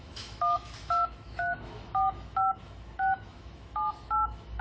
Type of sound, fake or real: fake